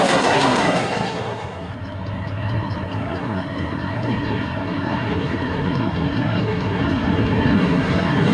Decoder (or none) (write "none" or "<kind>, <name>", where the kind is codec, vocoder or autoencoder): codec, SNAC